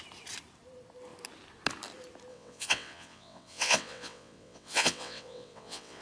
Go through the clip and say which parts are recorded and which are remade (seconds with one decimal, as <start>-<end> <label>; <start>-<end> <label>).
0.0-2.3 recorded; 2.3-6.0 remade